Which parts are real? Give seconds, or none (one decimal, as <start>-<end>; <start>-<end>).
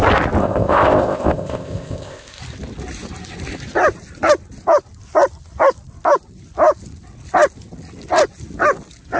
0.0-0.4; 2.4-9.2